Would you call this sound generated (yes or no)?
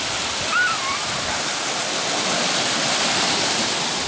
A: yes